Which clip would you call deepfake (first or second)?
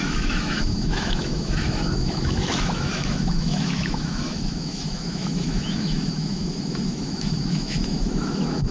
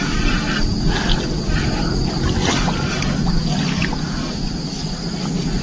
first